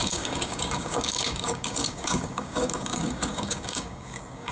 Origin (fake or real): fake